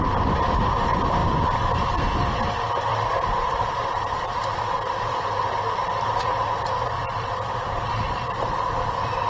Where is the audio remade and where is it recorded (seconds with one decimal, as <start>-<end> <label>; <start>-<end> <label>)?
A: 0.0-2.9 recorded; 2.9-7.8 remade; 7.8-9.3 recorded